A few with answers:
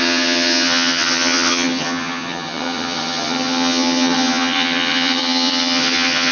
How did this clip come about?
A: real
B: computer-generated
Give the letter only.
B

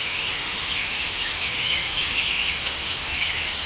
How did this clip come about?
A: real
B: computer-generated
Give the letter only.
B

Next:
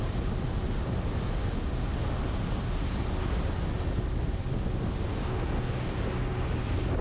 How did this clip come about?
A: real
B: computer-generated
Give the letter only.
A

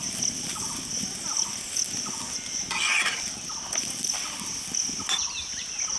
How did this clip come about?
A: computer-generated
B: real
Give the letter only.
B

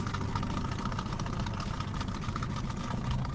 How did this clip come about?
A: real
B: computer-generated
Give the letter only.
A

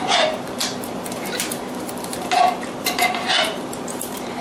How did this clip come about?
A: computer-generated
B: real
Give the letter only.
A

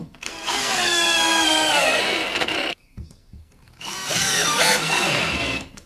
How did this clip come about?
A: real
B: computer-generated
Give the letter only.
B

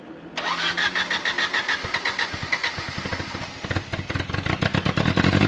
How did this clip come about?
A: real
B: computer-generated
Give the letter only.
A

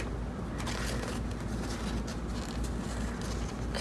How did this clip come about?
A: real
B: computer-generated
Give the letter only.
A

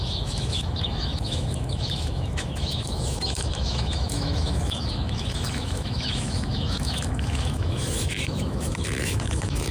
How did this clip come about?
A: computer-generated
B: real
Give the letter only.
A